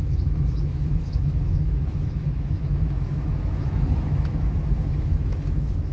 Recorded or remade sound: remade